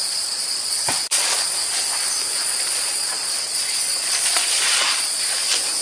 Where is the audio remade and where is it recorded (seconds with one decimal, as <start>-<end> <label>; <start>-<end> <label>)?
0.0-1.2 remade; 1.2-2.4 recorded; 2.4-5.2 remade; 5.2-5.8 recorded